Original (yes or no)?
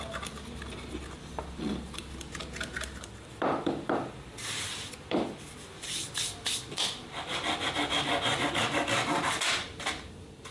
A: no